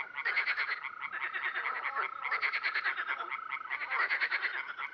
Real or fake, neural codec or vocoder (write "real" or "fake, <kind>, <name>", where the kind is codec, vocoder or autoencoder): real